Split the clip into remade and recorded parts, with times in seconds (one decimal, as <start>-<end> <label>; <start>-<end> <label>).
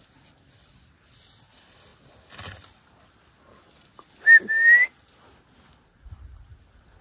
0.0-7.0 recorded